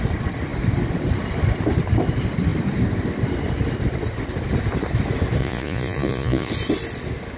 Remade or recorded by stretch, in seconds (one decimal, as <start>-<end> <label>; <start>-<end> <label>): 0.0-5.4 recorded; 5.4-6.5 remade; 6.5-7.4 recorded